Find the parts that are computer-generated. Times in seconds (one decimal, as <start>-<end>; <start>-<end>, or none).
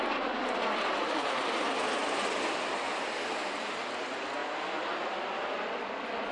2.0-3.6; 4.4-6.3